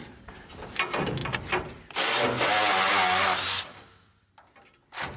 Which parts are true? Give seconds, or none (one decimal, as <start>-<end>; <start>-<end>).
0.0-5.2

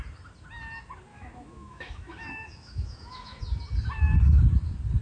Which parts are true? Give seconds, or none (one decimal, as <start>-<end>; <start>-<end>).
0.0-1.1; 3.4-5.0